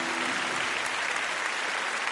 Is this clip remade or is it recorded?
recorded